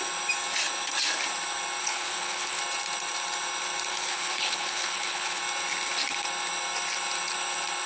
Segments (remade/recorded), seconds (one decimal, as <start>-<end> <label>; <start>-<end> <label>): 0.0-1.8 recorded; 1.8-2.6 remade; 2.6-3.9 recorded; 3.9-5.4 remade; 5.4-7.9 recorded